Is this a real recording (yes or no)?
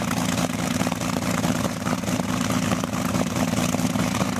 no